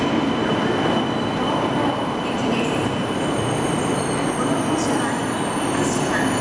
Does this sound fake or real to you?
real